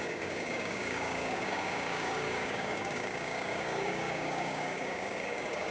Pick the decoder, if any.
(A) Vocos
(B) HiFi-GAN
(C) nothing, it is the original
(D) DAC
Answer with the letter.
D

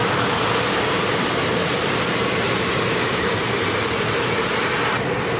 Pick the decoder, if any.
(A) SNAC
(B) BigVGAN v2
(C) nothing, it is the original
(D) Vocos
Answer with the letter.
B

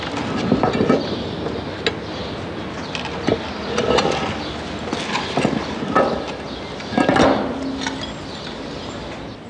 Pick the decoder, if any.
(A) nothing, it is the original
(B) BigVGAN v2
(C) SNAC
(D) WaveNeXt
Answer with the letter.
A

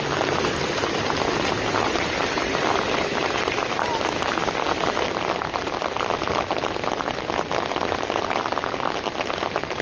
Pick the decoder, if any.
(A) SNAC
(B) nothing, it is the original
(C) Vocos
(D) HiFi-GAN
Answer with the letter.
B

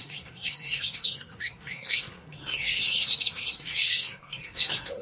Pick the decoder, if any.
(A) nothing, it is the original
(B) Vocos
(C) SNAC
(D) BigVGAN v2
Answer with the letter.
C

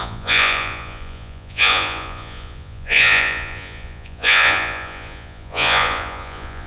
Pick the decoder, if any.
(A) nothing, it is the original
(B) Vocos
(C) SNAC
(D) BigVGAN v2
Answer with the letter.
B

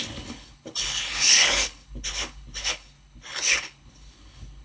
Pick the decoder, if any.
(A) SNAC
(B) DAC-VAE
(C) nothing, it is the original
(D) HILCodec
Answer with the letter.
D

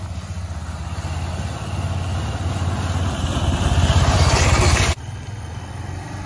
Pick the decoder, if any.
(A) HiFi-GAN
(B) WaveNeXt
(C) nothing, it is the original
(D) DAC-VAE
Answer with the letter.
C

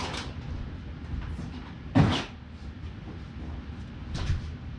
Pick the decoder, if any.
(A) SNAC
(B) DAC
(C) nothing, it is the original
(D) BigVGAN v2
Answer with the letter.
C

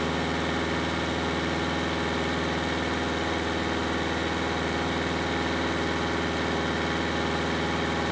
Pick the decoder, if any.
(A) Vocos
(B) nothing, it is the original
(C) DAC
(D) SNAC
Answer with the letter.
B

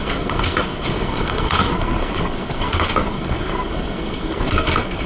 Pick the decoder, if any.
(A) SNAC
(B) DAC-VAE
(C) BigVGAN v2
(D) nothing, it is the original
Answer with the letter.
A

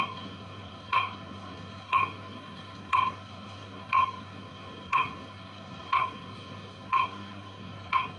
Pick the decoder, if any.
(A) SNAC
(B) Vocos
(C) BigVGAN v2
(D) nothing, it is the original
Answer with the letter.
A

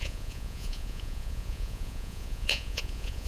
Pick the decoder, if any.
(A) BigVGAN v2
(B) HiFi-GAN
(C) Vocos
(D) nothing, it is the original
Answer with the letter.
C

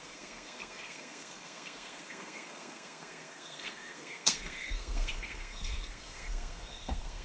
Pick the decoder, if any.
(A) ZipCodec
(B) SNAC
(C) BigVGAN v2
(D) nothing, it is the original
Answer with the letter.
B